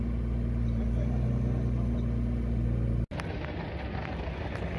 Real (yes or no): yes